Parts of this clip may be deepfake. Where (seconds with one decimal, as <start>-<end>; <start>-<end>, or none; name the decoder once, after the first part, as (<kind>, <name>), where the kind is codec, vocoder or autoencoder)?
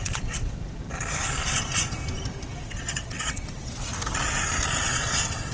0.0-0.6 (vocoder, WaveNeXt); 2.6-3.9; 4.8-5.5